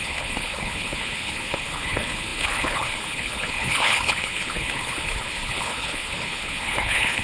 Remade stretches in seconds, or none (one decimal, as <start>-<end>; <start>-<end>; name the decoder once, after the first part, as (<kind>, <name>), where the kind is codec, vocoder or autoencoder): 0.0-7.2 (codec, HILCodec)